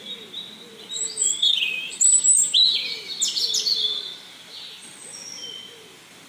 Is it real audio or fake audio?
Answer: real